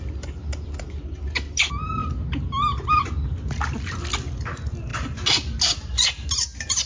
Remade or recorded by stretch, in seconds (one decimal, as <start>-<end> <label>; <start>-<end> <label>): 0.0-6.9 recorded